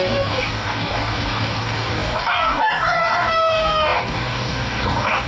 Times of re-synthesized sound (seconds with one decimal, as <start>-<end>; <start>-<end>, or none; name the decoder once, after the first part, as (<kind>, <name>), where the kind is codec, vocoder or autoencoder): 0.0-5.3 (codec, DAC)